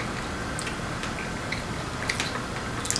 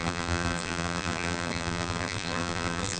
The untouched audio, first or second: first